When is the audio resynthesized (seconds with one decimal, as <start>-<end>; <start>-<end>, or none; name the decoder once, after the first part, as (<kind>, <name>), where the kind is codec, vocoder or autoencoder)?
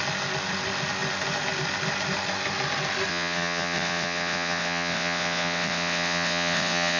3.1-7.0 (vocoder, WaveNeXt)